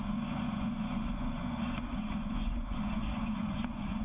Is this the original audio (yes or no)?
no